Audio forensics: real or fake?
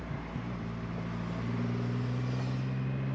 real